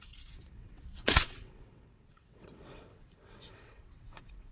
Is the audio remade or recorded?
remade